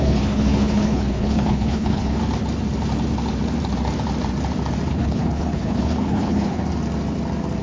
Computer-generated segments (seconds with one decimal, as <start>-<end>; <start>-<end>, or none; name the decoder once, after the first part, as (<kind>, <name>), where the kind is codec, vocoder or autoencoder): 0.0-2.2 (codec, HILCodec); 4.9-6.6